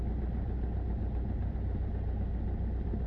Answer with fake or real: real